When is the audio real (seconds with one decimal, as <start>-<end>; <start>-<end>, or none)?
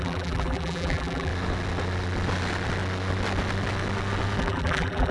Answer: 1.3-4.4